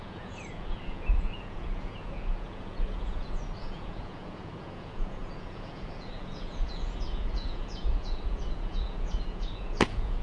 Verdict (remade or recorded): remade